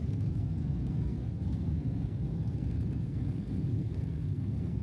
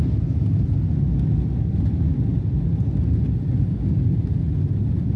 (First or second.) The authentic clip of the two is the second